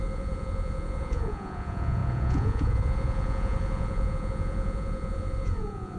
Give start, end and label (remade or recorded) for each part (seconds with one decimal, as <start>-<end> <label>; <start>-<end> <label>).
0.0-6.0 remade